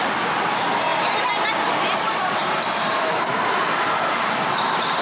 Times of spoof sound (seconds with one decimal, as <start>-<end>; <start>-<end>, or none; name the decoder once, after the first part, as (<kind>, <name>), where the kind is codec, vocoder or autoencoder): 0.0-5.0 (vocoder, BigVGAN v2)